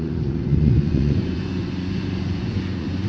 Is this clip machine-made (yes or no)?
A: yes